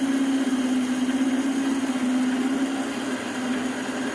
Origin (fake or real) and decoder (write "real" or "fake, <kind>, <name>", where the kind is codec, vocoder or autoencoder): real